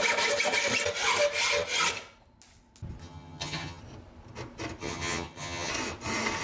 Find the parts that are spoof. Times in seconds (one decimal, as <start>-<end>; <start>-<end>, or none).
3.0-3.8; 4.8-5.7